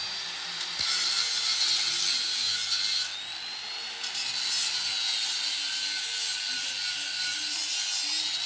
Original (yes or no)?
yes